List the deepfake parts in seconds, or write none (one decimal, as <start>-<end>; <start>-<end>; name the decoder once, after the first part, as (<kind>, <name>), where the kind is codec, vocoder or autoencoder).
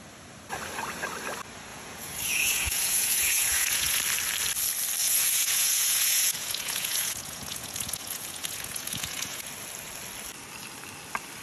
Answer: 1.7-4.0 (vocoder, Vocos); 5.0-9.5